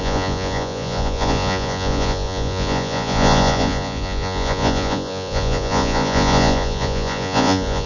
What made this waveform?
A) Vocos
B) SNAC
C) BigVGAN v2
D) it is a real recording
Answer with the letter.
A